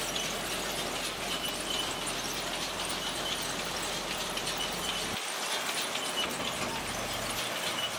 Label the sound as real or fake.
real